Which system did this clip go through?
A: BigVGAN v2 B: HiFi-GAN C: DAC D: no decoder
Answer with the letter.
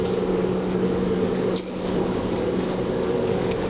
C